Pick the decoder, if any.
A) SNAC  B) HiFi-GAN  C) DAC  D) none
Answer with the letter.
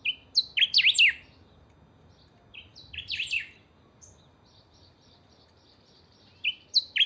D